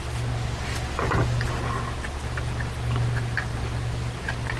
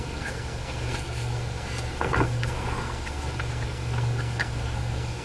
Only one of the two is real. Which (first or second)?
first